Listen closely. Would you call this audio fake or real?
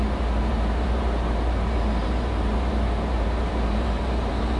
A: fake